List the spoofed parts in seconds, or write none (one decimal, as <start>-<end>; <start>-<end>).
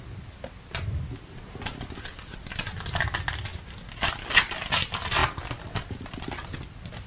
none